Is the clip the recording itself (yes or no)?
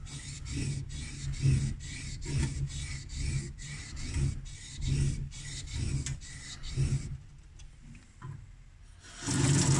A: yes